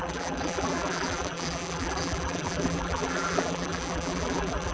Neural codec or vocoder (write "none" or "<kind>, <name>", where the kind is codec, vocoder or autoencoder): vocoder, BigVGAN v2